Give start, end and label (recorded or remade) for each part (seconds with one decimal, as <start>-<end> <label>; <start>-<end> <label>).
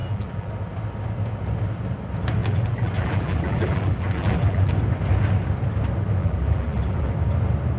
0.0-0.5 remade; 0.5-2.4 recorded; 2.4-4.7 remade; 4.7-6.2 recorded; 6.2-7.1 remade; 7.1-7.8 recorded